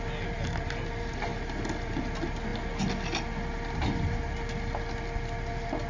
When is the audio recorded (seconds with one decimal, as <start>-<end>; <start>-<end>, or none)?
0.0-5.9